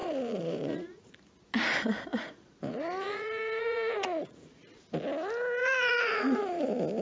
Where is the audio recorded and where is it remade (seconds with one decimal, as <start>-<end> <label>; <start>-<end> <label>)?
0.0-1.2 remade; 1.2-2.1 recorded; 2.1-4.8 remade; 4.8-5.6 recorded; 5.6-6.6 remade; 6.6-7.0 recorded